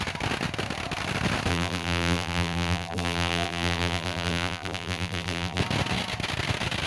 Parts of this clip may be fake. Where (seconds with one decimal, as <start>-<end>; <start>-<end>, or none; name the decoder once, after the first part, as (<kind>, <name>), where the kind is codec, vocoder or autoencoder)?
1.5-5.6 (vocoder, BigVGAN v2)